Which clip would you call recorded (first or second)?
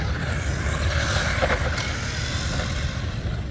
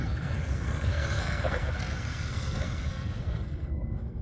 first